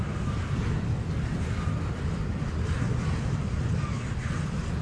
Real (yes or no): yes